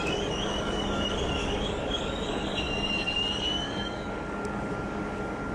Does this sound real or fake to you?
fake